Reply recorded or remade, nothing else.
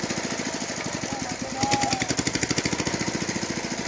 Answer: recorded